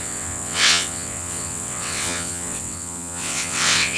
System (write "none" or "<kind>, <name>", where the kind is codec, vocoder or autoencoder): vocoder, WaveNeXt